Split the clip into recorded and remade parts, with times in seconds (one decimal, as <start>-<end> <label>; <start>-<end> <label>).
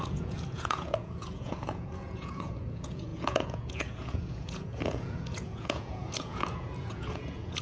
0.0-7.6 remade